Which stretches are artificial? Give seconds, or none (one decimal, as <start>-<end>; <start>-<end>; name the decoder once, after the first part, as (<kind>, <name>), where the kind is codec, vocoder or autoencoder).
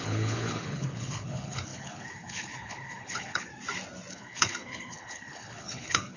0.0-3.5 (codec, HILCodec); 4.1-6.2